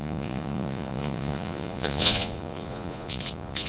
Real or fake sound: fake